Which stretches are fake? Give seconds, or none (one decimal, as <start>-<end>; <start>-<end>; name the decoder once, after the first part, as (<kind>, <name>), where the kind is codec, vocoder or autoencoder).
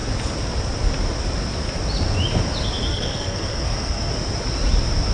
2.9-4.1 (codec, SNAC)